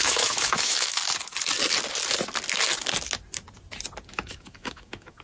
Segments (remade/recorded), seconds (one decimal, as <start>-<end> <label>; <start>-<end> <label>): 0.0-1.0 remade; 1.0-4.1 recorded; 4.1-5.2 remade